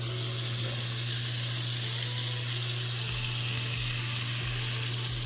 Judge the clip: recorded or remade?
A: recorded